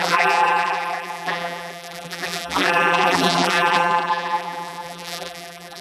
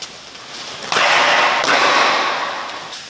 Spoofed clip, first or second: first